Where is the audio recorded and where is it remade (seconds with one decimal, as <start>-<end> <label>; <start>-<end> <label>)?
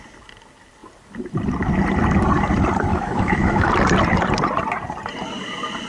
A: 0.0-2.9 recorded; 2.9-3.7 remade; 3.7-5.9 recorded